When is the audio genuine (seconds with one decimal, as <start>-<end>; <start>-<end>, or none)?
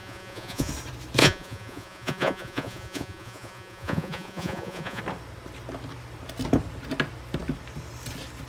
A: 0.7-1.2; 5.0-8.5